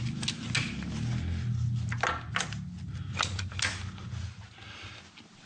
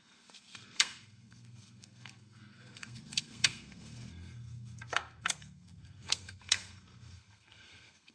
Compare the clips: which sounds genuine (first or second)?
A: first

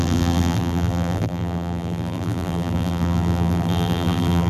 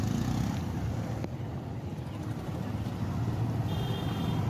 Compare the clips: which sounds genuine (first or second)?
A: second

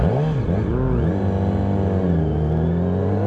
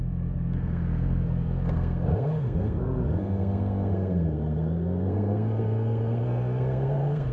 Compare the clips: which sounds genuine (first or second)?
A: first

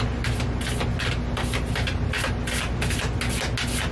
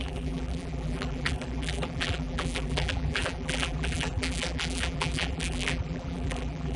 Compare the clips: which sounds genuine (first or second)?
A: first